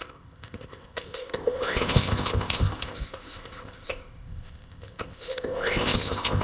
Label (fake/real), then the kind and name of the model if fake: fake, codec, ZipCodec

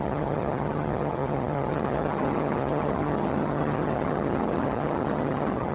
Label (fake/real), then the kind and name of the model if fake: fake, vocoder, HiFi-GAN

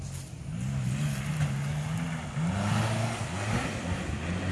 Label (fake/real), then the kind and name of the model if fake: real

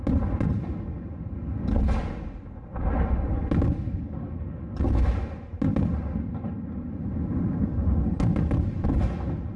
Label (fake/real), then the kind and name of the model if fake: real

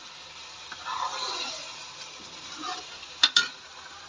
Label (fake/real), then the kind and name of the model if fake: real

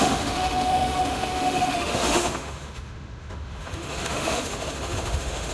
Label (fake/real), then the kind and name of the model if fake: fake, autoencoder, DAC-VAE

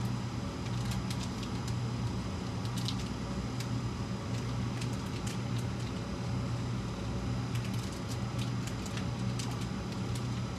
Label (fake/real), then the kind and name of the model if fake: real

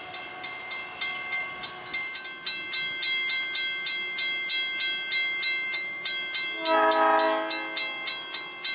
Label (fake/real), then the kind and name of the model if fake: real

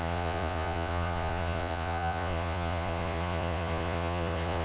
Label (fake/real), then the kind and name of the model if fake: fake, vocoder, Vocos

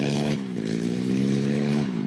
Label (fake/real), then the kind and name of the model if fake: fake, codec, HILCodec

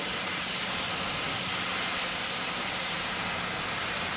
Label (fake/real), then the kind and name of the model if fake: real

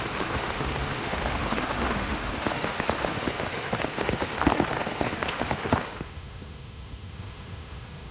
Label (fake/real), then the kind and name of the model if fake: fake, autoencoder, DAC-VAE